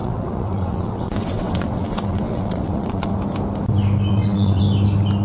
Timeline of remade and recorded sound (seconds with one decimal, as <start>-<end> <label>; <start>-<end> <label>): 0.0-3.1 remade; 3.1-4.1 recorded; 4.1-4.6 remade; 4.6-5.2 recorded